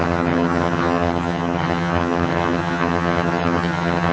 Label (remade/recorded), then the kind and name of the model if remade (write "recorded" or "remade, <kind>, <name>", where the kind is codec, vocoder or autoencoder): remade, vocoder, HiFi-GAN